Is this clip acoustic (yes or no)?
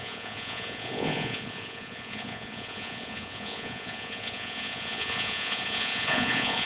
no